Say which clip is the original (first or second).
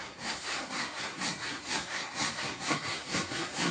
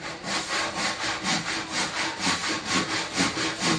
second